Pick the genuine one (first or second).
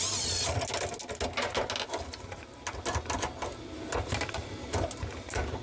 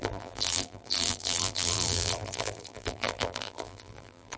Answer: first